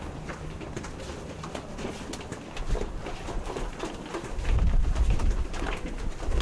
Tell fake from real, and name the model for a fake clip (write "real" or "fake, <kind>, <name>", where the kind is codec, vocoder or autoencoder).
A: real